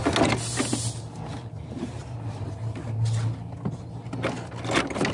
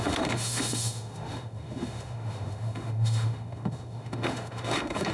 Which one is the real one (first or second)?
first